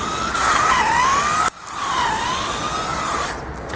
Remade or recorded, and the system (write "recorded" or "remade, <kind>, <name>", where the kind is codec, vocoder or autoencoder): recorded